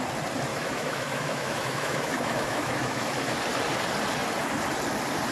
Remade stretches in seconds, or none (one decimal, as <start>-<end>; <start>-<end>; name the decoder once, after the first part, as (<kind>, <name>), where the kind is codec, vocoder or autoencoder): 0.5-3.4 (autoencoder, DAC-VAE)